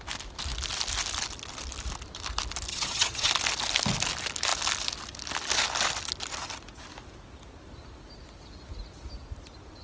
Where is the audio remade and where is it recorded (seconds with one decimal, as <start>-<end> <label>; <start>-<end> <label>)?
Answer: 0.0-2.7 recorded; 2.7-3.3 remade; 3.3-9.8 recorded